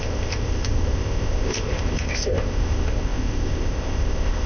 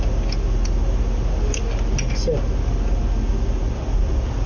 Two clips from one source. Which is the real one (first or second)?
second